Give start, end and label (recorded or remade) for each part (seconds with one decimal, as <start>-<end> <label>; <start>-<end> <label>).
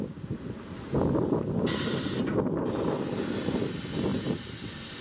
0.0-4.1 recorded; 4.1-5.0 remade